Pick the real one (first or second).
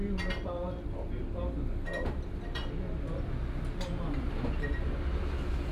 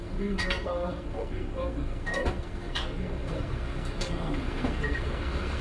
first